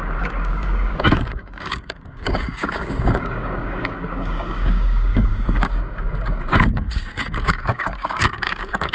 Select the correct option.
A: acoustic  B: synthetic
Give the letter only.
B